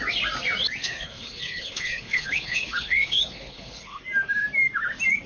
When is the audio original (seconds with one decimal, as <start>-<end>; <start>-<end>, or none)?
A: 0.0-0.8; 4.0-5.3